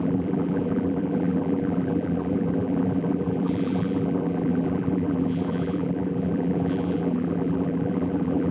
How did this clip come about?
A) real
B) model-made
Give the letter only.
B